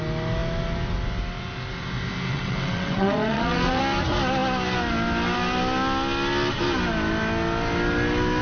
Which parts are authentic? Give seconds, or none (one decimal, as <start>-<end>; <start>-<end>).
0.0-2.3; 3.8-8.4